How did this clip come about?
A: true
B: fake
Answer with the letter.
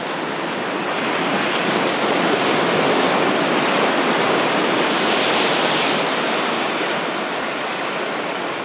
A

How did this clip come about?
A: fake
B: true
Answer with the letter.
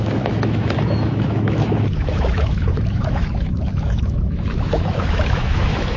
A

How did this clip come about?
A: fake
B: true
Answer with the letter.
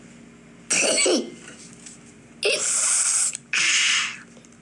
B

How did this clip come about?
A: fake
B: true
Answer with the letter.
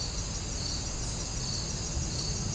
B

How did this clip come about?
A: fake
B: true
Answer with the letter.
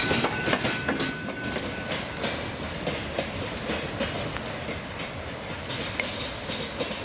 B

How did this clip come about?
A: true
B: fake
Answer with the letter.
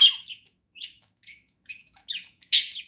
B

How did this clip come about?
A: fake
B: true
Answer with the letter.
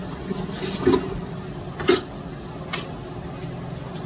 B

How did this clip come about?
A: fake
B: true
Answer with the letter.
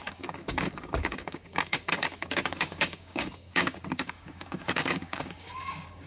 A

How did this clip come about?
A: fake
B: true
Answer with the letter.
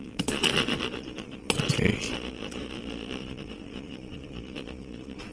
A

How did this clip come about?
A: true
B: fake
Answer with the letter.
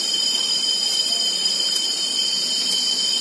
A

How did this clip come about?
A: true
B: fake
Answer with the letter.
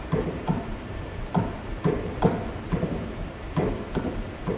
B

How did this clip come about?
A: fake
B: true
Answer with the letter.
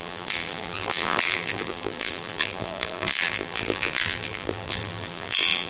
A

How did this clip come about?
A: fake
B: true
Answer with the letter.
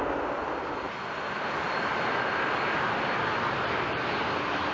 B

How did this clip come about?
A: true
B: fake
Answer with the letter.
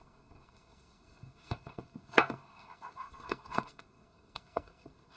B